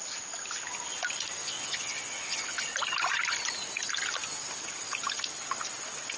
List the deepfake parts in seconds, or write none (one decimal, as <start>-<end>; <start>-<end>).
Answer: 1.4-2.6